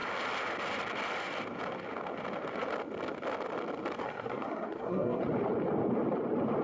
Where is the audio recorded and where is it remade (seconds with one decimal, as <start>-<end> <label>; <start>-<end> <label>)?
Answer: 0.0-4.0 recorded; 4.0-5.2 remade; 5.2-6.6 recorded